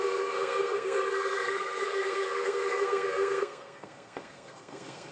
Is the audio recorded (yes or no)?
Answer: no